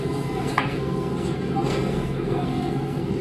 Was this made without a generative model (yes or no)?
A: no